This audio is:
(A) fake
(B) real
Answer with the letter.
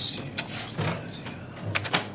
B